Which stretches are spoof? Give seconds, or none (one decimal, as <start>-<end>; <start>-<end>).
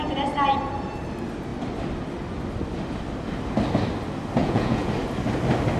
4.4-4.9